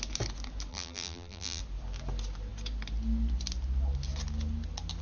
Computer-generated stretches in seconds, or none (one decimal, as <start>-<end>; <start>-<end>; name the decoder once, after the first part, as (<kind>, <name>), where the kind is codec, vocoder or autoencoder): 0.7-1.6 (vocoder, BigVGAN v2)